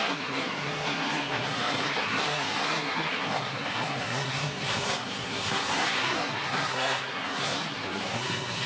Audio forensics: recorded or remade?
remade